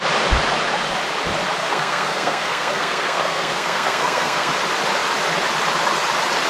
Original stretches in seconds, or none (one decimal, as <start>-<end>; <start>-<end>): 0.0-1.6; 4.5-6.5